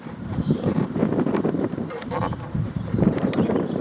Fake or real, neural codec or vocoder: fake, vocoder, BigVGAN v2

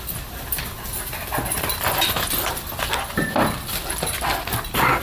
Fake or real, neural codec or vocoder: real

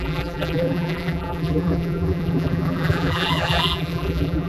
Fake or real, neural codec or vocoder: fake, vocoder, BigVGAN v2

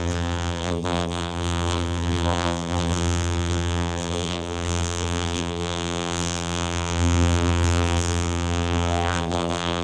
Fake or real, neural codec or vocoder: fake, vocoder, BigVGAN v2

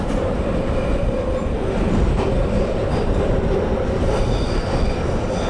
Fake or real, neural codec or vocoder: real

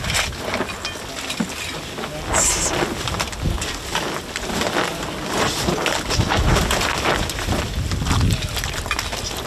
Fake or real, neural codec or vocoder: real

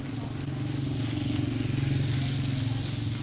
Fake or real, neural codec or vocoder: real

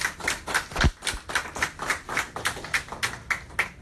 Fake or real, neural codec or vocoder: real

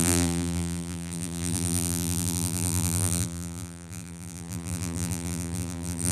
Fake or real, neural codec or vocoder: fake, vocoder, BigVGAN v2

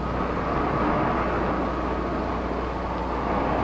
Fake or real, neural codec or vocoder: real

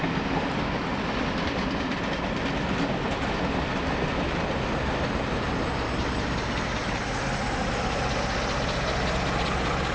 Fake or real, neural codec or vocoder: real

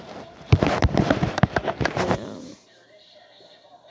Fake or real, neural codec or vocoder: fake, vocoder, BigVGAN v2